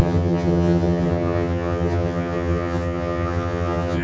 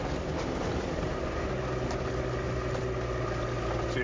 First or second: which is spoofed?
first